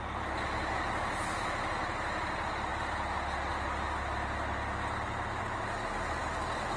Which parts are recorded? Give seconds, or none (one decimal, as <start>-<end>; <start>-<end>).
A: 0.0-6.8